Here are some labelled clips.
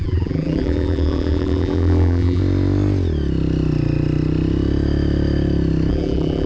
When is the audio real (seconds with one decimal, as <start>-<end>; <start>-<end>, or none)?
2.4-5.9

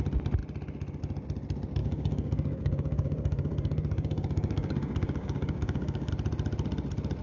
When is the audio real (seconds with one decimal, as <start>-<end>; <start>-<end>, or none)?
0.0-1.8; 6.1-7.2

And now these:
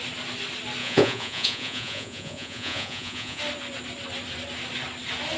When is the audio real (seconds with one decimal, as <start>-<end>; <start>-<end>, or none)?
0.0-0.8; 3.4-5.4

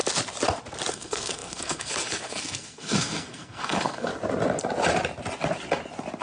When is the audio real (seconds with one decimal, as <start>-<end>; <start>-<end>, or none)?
0.0-0.9; 4.1-6.2

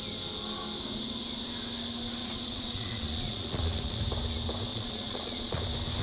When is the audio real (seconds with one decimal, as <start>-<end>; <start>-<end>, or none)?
0.0-2.2; 4.0-4.7; 5.6-6.0

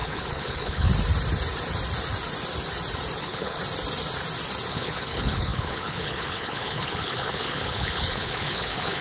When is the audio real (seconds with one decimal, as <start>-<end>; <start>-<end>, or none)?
0.9-3.2; 3.6-4.7

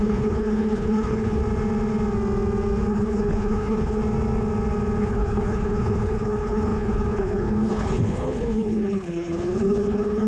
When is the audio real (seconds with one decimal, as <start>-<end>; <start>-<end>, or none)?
1.4-2.9; 4.0-5.0

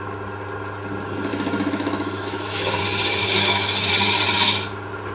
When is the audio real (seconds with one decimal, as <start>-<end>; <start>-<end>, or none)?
0.0-1.3; 2.8-3.2; 3.9-5.1